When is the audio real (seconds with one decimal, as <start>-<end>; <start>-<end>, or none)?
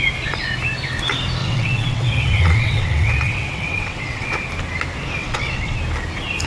0.0-1.4; 4.4-5.2; 5.8-6.5